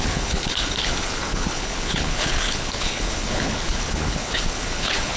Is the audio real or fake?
fake